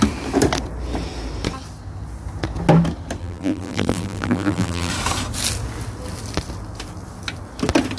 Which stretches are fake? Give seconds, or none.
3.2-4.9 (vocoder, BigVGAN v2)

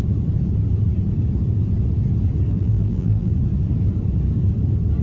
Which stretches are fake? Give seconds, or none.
2.5-3.3 (vocoder, BigVGAN v2)

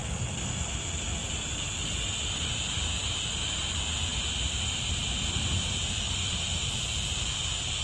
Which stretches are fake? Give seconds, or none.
0.0-0.6 (vocoder, BigVGAN v2); 1.2-2.5; 3.0-3.6; 4.1-6.7

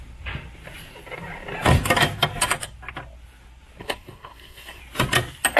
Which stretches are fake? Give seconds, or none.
3.8-4.8 (codec, SNAC)

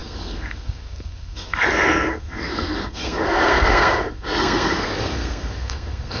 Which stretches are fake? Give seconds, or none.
0.0-6.2 (codec, SNAC)

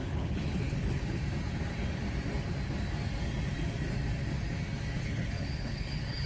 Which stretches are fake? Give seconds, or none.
0.0-1.2 (codec, HILCodec); 5.0-6.3